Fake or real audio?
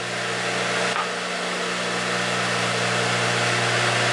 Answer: real